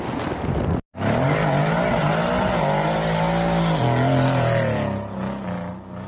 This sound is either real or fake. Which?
real